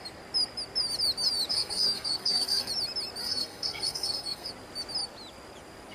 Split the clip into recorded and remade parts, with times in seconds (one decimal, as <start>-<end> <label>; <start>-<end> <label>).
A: 0.0-1.5 recorded; 1.5-2.7 remade; 2.7-3.2 recorded; 3.2-4.5 remade; 4.5-5.9 recorded